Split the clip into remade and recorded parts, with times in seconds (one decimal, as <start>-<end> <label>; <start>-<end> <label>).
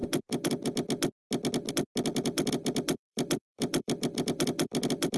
0.0-2.1 recorded; 2.1-5.2 remade